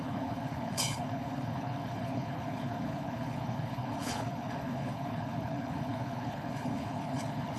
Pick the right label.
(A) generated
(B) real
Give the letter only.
A